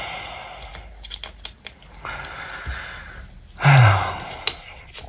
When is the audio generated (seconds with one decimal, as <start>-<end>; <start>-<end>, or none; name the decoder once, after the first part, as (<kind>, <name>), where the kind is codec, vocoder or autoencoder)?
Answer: none

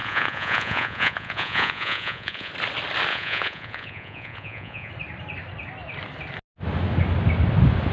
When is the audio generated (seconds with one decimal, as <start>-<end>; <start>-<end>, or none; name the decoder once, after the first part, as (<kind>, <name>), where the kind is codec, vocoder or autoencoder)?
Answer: 0.0-2.5 (vocoder, Vocos); 3.1-4.9

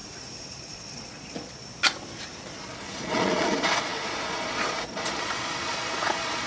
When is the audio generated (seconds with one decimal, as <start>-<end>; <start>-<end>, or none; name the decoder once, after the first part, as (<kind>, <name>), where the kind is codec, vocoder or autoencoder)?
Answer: 0.5-1.6 (vocoder, Vocos); 3.0-6.5

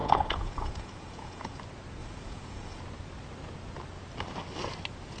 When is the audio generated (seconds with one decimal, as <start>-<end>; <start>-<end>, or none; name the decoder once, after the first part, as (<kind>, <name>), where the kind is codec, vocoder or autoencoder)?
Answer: 0.0-1.6 (vocoder, Vocos); 2.0-2.8

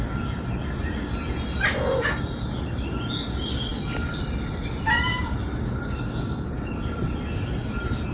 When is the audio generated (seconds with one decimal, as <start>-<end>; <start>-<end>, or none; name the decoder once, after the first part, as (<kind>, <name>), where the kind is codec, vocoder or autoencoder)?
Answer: none

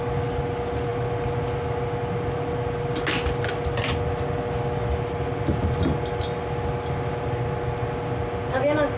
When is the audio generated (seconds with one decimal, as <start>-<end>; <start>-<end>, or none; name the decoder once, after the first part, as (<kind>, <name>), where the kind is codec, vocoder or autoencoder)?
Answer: none

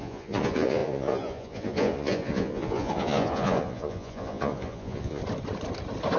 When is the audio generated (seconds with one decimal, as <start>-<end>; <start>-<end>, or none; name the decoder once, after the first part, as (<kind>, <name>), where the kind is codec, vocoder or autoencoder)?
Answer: 0.0-5.2 (vocoder, Vocos)

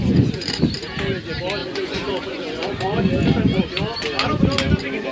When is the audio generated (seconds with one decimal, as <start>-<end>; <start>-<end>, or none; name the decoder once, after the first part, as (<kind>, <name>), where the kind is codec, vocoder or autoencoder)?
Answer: 0.0-0.6 (vocoder, Vocos); 1.6-3.1